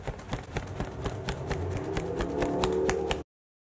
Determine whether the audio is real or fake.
real